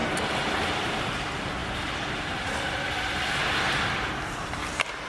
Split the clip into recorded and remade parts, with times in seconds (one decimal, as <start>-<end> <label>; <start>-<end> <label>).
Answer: 0.0-5.1 remade